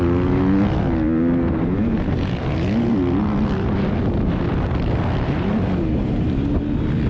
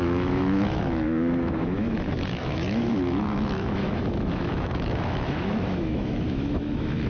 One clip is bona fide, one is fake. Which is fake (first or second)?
second